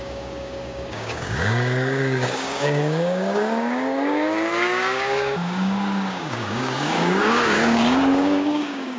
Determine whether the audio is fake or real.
fake